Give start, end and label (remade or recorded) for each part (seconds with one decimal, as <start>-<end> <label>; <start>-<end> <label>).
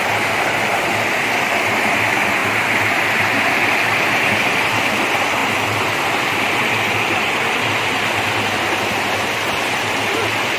0.0-10.6 recorded